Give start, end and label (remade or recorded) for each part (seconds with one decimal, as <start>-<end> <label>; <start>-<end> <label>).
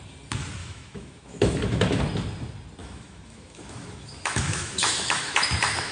0.0-0.6 recorded; 0.6-2.0 remade; 2.0-2.8 recorded; 2.8-5.9 remade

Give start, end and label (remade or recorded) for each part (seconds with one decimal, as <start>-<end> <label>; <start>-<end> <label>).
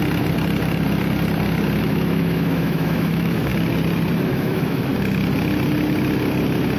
0.0-1.8 recorded; 1.8-3.5 remade; 3.5-4.3 recorded; 4.3-4.9 remade; 4.9-6.8 recorded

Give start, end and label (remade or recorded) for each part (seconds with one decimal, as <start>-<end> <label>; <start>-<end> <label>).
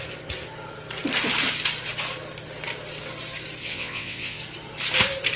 0.0-3.6 recorded; 3.6-4.4 remade; 4.4-5.4 recorded